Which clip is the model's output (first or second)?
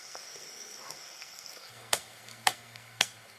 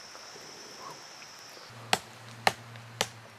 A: first